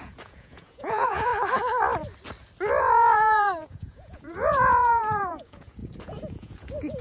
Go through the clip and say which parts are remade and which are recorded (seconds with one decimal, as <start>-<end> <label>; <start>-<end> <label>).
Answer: 0.0-1.3 remade; 1.3-2.8 recorded; 2.8-7.0 remade